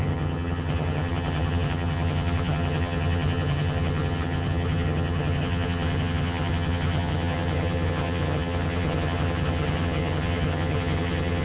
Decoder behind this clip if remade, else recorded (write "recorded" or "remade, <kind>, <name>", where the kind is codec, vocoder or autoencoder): remade, vocoder, HiFi-GAN